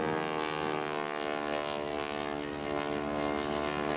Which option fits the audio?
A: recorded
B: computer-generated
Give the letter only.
A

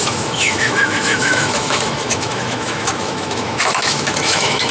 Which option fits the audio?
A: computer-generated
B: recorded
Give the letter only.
A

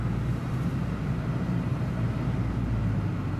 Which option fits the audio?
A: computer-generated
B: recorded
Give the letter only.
B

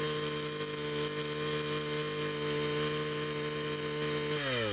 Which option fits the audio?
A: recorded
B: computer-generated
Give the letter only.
A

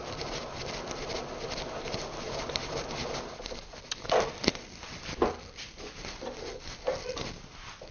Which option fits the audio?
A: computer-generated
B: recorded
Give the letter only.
B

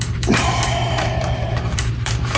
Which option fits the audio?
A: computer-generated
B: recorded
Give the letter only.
A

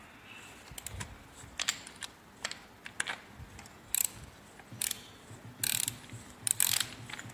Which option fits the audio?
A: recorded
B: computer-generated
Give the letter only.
A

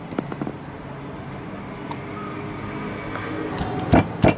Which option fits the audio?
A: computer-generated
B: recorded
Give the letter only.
B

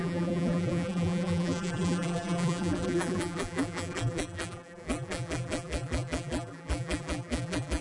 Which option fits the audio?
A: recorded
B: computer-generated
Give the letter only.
B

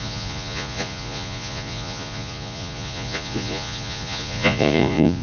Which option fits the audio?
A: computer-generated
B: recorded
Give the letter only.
A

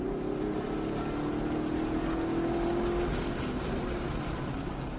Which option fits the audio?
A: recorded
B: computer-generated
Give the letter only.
A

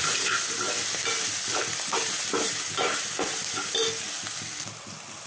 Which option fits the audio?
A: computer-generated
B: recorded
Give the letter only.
A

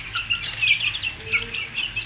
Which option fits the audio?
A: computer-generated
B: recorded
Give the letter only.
B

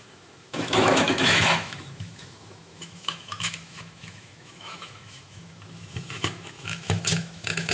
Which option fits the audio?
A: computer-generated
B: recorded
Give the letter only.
A